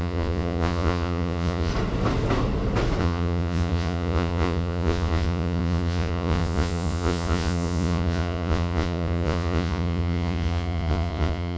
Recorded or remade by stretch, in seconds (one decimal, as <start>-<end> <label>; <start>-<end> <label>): 0.0-1.7 remade; 1.7-3.0 recorded; 3.0-11.6 remade